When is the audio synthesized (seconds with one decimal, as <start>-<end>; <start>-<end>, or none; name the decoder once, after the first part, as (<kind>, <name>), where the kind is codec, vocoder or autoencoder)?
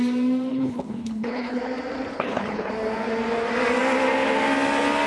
0.5-1.6 (codec, HILCodec); 2.1-2.7